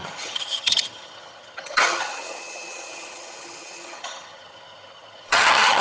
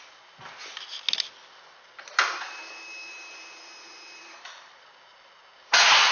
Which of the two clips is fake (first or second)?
first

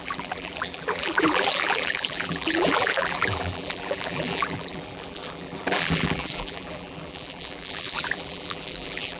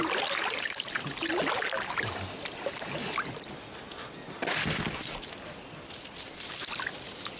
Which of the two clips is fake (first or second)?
first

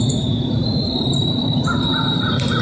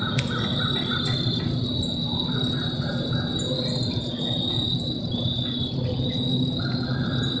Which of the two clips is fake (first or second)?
first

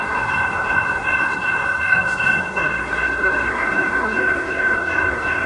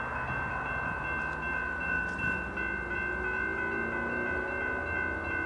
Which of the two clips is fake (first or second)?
first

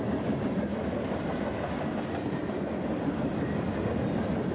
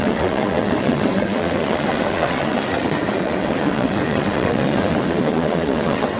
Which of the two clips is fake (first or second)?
second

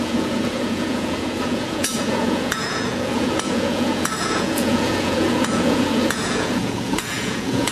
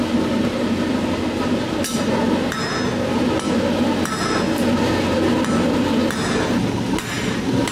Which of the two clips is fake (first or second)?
first